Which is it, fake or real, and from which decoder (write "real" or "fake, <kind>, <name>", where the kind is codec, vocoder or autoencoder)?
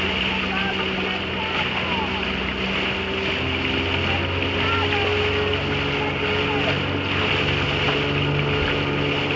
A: real